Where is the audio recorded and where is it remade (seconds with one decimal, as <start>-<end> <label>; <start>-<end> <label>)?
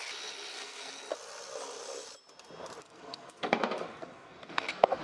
0.0-0.5 recorded; 0.5-1.0 remade; 1.0-2.8 recorded; 2.8-5.0 remade